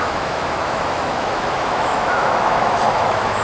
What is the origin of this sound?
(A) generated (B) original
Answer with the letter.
A